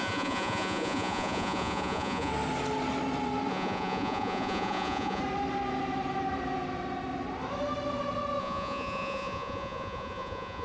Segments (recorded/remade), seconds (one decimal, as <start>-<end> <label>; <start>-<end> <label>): 0.0-2.3 remade; 2.3-3.5 recorded; 3.5-5.2 remade; 5.2-8.4 recorded; 8.4-10.6 remade